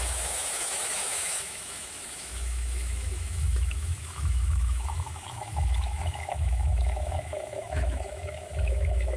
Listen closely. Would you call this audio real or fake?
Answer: fake